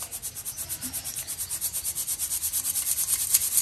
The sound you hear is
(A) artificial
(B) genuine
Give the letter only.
B